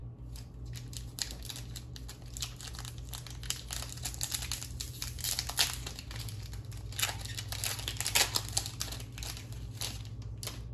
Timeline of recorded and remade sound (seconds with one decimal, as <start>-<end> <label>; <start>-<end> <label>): 0.0-10.7 recorded